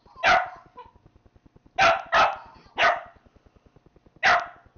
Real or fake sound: real